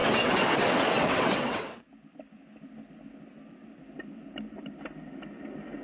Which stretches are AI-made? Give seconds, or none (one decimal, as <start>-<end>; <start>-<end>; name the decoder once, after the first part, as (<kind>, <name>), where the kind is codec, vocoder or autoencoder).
0.0-1.9 (vocoder, WaveNeXt)